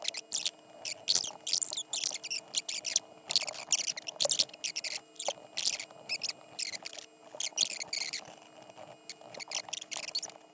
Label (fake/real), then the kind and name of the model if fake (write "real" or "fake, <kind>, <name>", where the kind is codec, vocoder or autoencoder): real